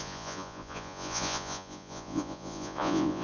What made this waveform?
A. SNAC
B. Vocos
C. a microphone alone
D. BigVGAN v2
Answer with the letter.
B